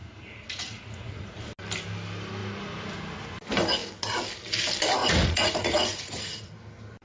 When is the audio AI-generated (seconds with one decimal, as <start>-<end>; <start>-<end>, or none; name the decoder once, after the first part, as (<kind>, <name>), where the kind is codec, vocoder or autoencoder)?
0.0-1.4 (vocoder, Vocos); 5.0-6.5